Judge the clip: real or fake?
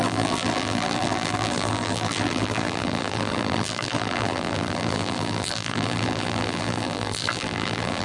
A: fake